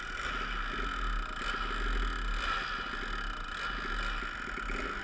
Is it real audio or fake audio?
real